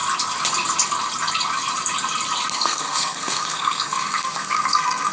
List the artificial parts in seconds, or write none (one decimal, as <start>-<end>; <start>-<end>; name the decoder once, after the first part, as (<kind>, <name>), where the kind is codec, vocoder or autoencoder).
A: 2.5-5.1 (codec, SNAC)